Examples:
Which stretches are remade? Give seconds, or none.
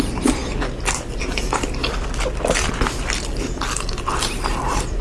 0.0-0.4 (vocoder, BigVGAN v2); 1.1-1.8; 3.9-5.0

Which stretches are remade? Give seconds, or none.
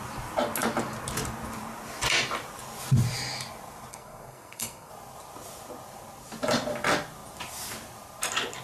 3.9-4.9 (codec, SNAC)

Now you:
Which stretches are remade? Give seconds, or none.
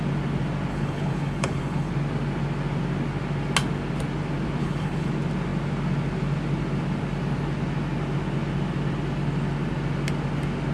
0.7-1.9 (codec, HILCodec); 4.6-5.1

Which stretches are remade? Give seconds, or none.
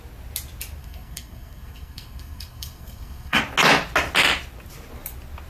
0.8-3.4 (codec, SNAC)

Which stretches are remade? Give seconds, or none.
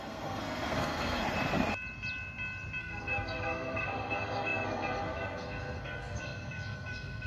0.0-1.2 (codec, SNAC); 2.8-7.3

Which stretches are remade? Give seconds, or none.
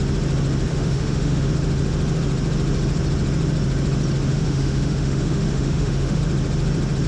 0.7-1.5 (autoencoder, DAC-VAE); 4.3-6.2